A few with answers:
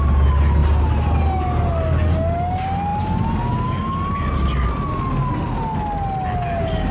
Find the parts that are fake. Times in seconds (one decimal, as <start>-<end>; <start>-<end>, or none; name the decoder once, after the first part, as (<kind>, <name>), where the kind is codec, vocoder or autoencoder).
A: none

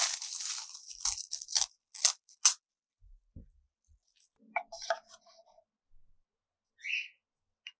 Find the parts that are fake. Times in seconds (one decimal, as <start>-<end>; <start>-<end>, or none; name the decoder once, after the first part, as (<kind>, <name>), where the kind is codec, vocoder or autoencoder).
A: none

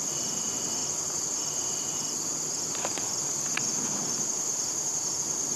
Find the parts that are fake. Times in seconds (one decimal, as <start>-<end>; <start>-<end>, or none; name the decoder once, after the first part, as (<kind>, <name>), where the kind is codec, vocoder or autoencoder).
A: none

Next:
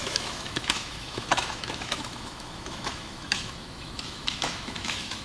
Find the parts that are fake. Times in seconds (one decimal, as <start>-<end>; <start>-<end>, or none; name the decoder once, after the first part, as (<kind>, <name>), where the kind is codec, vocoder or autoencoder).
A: 0.0-5.2 (autoencoder, DAC-VAE)

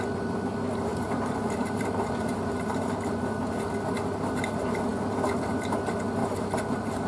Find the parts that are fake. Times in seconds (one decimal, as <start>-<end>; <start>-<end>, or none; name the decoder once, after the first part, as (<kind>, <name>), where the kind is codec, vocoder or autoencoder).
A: 0.9-2.9 (vocoder, BigVGAN v2); 6.2-7.1

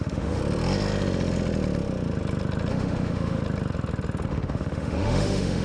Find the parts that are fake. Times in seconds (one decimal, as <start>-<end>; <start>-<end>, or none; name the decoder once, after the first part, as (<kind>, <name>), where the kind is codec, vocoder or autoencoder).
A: 0.0-0.4 (autoencoder, DAC-VAE); 2.7-3.4; 4.3-5.6